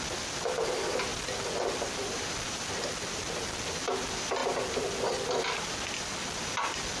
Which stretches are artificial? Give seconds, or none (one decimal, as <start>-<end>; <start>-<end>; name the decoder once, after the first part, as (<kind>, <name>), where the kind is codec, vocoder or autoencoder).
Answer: none